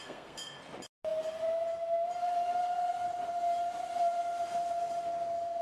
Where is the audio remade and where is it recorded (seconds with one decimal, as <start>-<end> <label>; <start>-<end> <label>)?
0.0-0.6 remade; 0.6-5.6 recorded

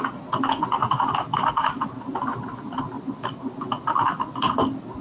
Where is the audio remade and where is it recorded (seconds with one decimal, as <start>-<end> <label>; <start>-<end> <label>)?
0.0-5.0 recorded